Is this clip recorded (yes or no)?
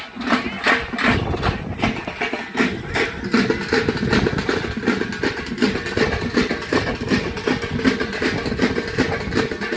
yes